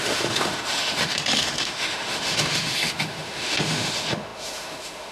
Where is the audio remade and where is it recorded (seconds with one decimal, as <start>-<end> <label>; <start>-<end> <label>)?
0.0-5.1 remade